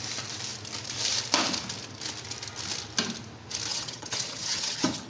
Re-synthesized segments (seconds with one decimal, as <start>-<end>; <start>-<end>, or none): 3.7-5.1